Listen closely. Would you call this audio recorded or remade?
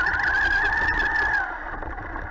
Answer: recorded